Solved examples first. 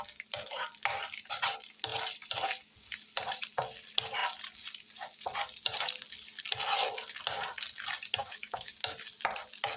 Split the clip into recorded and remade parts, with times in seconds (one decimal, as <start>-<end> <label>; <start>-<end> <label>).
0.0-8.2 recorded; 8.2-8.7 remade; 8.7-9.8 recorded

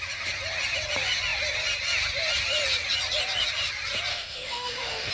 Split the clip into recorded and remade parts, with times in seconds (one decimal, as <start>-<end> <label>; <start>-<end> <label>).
0.0-4.1 recorded; 4.1-5.1 remade

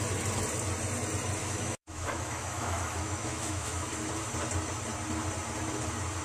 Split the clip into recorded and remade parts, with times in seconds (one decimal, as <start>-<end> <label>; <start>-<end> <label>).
0.0-1.4 recorded; 1.4-3.9 remade; 3.9-6.2 recorded

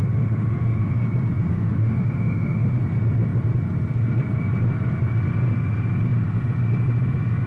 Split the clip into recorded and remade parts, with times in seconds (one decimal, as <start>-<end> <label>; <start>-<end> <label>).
0.0-1.0 remade; 1.0-1.5 recorded; 1.5-2.8 remade; 2.8-7.5 recorded

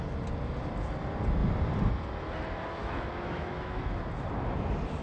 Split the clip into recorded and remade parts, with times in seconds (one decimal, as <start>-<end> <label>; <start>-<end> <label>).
0.0-2.8 recorded; 2.8-3.8 remade; 3.8-5.0 recorded